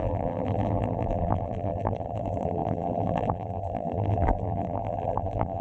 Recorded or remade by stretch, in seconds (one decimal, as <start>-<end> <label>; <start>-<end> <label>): 0.0-5.6 remade